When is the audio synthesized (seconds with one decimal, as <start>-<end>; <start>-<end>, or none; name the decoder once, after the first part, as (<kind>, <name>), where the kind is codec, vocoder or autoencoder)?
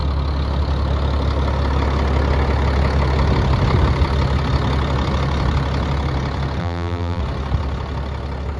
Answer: 6.6-7.2 (vocoder, BigVGAN v2)